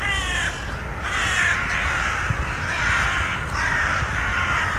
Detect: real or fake real